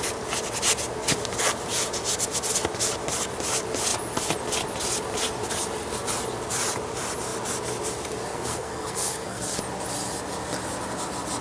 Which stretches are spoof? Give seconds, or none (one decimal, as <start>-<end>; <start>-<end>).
8.3-9.6